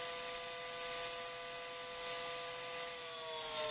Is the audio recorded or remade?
recorded